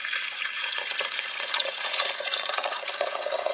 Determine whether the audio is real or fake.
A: fake